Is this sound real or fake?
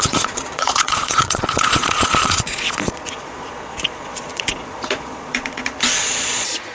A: fake